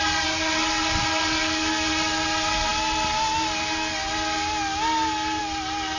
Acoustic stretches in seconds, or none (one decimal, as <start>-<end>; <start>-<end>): 0.0-6.0